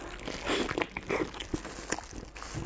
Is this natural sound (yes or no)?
yes